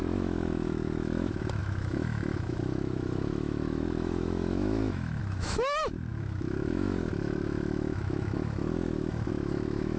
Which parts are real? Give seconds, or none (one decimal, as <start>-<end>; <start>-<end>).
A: none

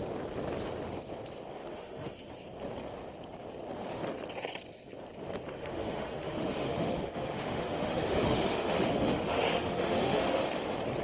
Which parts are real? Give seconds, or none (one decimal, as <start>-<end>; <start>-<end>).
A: 0.0-1.6; 2.3-5.6; 10.5-11.0

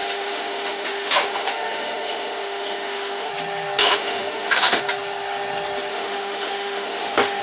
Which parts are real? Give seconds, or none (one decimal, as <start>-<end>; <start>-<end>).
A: 3.3-3.8; 4.8-5.9